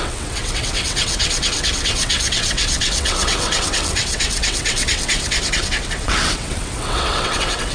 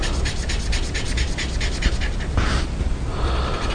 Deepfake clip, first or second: first